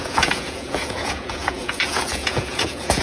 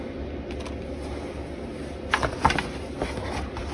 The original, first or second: second